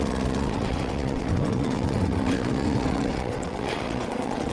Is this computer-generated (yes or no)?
yes